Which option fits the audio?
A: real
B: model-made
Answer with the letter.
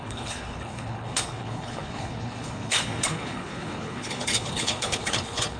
B